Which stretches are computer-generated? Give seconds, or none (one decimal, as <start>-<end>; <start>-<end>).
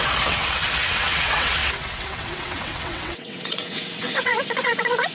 0.0-5.1